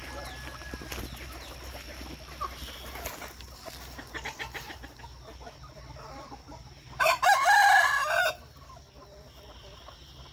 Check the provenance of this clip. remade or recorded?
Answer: recorded